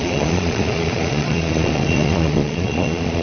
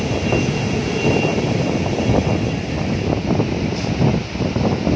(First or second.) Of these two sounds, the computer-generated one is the first